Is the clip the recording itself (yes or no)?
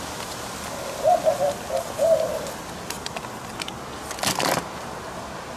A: yes